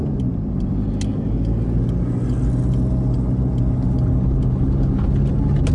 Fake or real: real